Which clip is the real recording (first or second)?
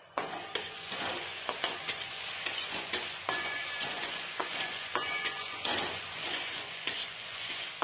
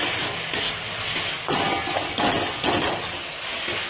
second